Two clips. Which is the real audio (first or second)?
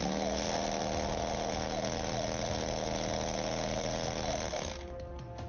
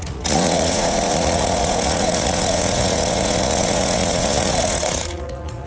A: first